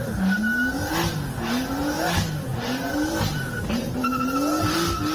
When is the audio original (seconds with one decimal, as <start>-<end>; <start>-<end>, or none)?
0.0-2.5; 3.9-5.1